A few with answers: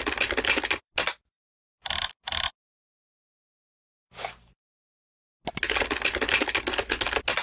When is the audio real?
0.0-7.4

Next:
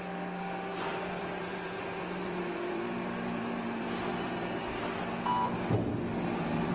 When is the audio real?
0.0-0.7; 4.7-6.7

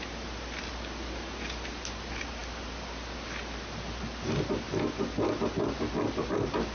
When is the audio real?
0.0-6.7

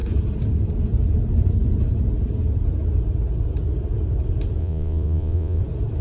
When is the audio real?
0.0-4.6; 5.6-6.0

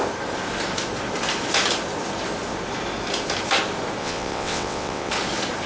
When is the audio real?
0.0-4.0; 5.1-5.7

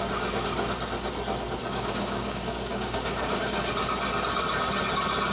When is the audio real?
0.0-1.6; 3.7-5.3